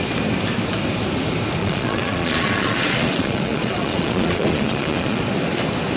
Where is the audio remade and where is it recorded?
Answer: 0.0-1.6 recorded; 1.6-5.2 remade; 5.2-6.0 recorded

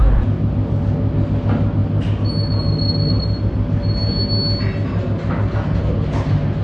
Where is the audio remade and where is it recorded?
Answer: 0.0-6.6 recorded

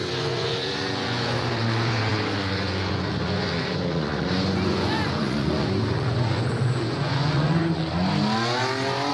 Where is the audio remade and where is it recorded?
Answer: 0.0-7.8 remade; 7.8-9.1 recorded